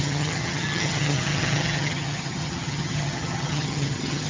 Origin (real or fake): fake